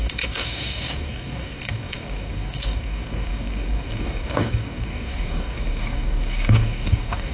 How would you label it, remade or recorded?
remade